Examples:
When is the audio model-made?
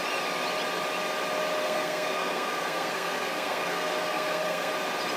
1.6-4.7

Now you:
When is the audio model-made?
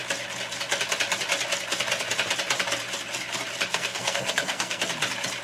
3.7-4.8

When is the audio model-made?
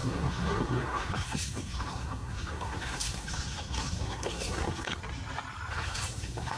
0.0-5.0; 5.7-6.6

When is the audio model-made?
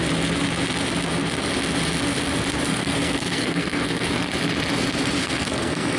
2.7-4.3; 5.2-6.0